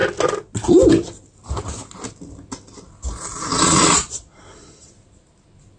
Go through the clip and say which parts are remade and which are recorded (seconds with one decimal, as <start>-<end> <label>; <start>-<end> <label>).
0.0-3.5 recorded; 3.5-4.9 remade; 4.9-5.8 recorded